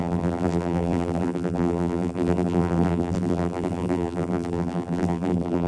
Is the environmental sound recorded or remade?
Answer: remade